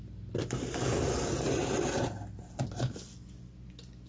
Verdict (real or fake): real